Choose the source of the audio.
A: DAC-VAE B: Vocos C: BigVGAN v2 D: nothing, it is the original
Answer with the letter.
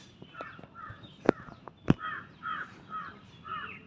C